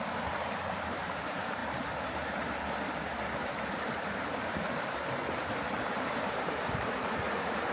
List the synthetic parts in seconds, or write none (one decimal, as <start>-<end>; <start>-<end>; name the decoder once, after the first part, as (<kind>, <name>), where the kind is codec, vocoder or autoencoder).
0.0-7.7 (vocoder, BigVGAN v2)